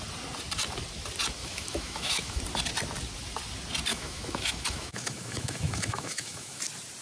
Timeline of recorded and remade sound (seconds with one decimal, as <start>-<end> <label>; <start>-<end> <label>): 0.0-1.4 recorded; 1.4-2.4 remade; 2.4-3.9 recorded; 3.9-6.6 remade; 6.6-7.0 recorded